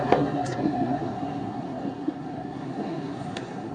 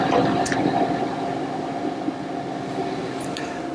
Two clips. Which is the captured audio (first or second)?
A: second